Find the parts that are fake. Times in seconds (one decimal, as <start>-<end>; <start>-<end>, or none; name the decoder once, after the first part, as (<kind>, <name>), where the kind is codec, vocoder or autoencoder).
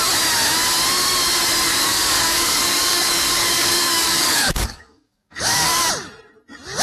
1.7-5.8 (codec, DAC)